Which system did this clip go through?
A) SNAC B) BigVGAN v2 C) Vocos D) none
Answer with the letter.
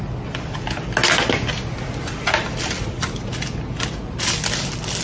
D